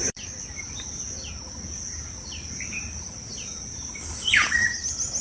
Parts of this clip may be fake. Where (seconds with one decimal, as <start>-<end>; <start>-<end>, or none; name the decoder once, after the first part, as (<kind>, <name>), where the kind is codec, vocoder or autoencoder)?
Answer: none